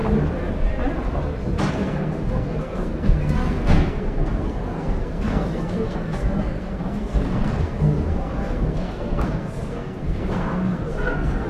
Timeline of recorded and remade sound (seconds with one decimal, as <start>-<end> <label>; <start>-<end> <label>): 0.0-1.7 recorded; 1.7-11.5 remade